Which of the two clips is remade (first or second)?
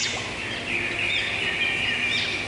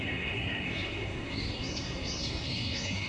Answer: second